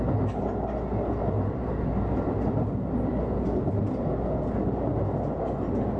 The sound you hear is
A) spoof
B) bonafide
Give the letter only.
B